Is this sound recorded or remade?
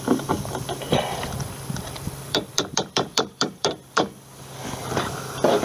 remade